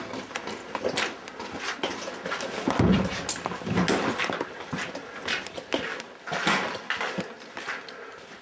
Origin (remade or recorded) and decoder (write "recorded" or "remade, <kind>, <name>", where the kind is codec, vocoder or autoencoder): recorded